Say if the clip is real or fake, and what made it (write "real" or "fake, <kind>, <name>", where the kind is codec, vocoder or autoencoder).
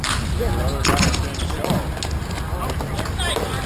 real